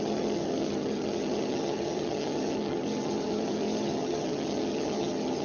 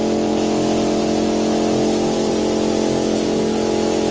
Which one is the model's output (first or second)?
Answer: first